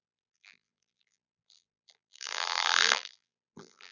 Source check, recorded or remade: remade